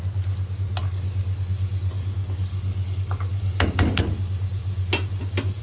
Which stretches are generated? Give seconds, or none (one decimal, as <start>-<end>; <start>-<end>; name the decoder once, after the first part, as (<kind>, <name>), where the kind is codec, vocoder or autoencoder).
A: 2.5-4.0 (codec, DAC)